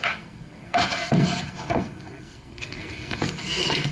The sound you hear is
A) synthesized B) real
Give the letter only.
A